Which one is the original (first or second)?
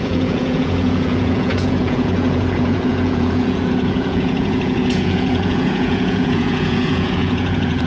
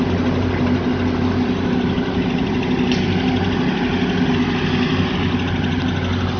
second